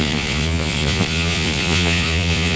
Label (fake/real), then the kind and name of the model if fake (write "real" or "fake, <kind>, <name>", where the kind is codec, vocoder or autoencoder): fake, vocoder, Vocos